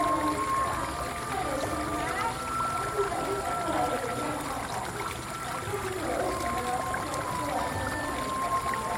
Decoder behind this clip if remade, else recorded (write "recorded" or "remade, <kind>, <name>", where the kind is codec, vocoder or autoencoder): recorded